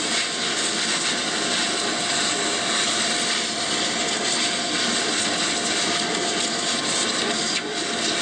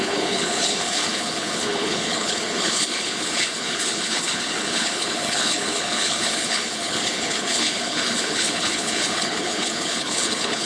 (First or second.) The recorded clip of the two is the first